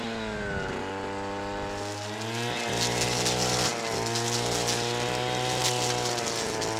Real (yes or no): yes